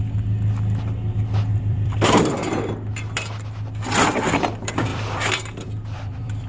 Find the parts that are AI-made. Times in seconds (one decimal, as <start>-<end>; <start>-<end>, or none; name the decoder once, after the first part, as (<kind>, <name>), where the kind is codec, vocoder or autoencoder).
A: 1.5-2.2 (vocoder, BigVGAN v2); 4.9-6.5